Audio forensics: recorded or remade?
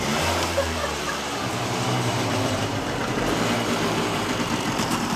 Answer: remade